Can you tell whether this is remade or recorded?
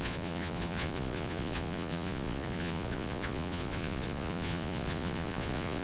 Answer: remade